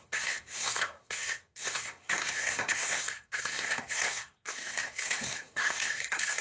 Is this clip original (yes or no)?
no